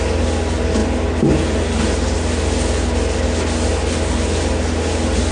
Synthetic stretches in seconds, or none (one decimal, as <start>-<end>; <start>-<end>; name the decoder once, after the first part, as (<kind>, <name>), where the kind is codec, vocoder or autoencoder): none